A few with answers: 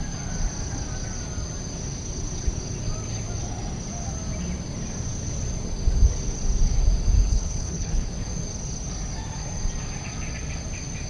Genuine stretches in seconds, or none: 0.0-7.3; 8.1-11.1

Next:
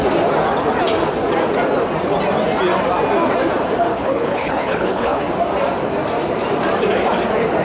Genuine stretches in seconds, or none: 0.0-3.9; 5.2-7.6

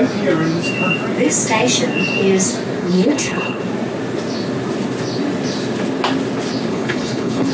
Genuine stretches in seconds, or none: 0.0-2.8; 3.6-6.7